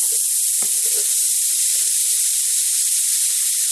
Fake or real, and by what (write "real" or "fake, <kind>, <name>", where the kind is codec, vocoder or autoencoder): real